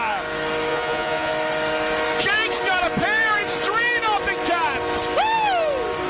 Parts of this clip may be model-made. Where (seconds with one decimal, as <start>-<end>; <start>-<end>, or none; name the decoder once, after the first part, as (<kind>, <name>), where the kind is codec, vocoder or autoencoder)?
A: 0.7-1.3 (vocoder, Vocos)